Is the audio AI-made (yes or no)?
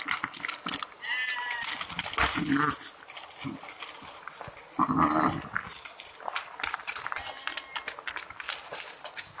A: no